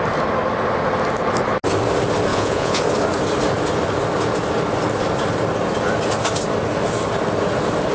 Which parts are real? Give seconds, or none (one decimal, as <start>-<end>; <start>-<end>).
0.0-2.3; 2.8-7.9